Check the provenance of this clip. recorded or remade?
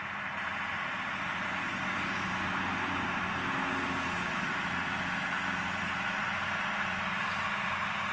recorded